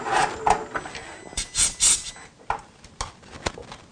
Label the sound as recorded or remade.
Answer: recorded